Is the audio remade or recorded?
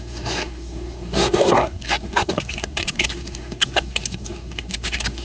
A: remade